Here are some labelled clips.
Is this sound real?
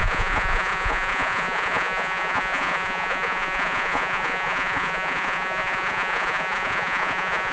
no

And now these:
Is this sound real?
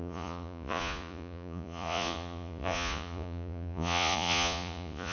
no